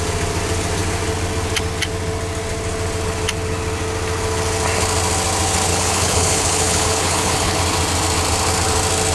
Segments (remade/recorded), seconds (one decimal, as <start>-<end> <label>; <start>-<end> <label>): 0.0-5.7 recorded; 5.7-7.6 remade; 7.6-9.1 recorded